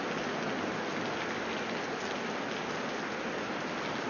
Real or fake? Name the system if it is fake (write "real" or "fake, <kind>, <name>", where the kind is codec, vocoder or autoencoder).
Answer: real